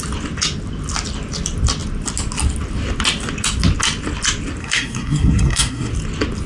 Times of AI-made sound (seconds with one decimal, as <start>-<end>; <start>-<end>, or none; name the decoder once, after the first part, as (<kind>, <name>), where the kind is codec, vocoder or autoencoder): 4.6-5.9 (codec, SNAC)

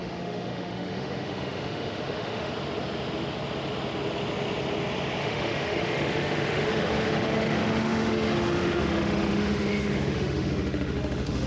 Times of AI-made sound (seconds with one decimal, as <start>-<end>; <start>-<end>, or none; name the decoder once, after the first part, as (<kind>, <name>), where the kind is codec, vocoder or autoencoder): 0.0-2.5 (autoencoder, DAC-VAE); 5.2-11.5

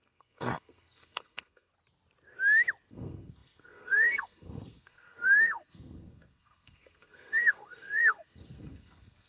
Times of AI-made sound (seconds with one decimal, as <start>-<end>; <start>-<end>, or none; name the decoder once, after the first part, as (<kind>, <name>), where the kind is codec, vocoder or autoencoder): 0.0-1.7 (codec, SNAC); 2.9-9.3

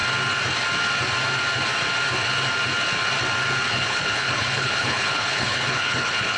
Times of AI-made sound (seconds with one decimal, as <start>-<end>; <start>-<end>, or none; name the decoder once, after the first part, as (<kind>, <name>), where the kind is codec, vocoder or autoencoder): 3.7-6.4 (codec, HILCodec)

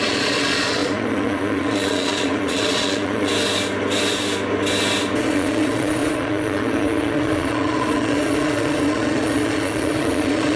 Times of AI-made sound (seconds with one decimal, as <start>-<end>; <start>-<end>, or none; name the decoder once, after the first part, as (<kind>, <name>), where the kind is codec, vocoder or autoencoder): 0.0-3.3 (vocoder, Vocos); 5.2-10.6

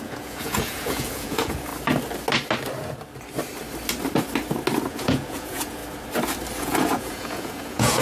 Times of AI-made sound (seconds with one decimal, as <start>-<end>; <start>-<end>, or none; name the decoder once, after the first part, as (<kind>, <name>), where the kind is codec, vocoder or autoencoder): 0.0-1.7 (vocoder, Vocos); 4.9-5.8; 6.6-8.0